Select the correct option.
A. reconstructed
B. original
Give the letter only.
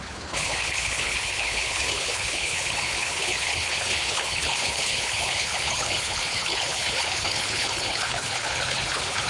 A